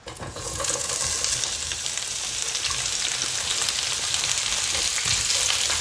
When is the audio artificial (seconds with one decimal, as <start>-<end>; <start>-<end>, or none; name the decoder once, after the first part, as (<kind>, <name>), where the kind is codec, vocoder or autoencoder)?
0.0-0.9 (vocoder, Vocos)